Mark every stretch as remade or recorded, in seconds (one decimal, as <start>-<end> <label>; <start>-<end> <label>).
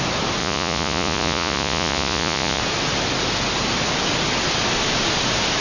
0.0-0.4 recorded; 0.4-2.6 remade; 2.6-5.6 recorded